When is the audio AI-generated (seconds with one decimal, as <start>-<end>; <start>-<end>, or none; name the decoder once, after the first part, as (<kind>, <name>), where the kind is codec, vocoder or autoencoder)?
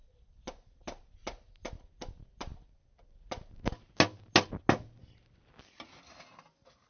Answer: none